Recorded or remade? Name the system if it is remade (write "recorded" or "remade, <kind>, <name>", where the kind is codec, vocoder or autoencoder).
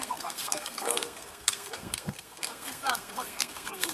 remade, codec, SNAC